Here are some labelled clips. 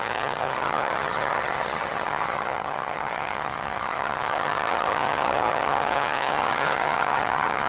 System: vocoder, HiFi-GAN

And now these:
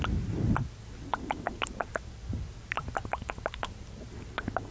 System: none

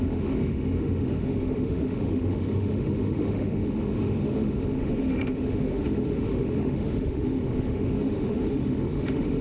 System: autoencoder, DAC-VAE